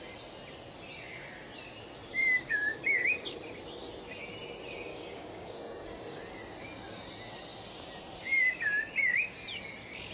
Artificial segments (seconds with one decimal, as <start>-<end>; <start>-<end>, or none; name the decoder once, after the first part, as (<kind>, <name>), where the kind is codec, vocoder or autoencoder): 2.1-3.2 (codec, DAC); 4.9-6.2